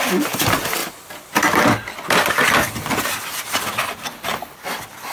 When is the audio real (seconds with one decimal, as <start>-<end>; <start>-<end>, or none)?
none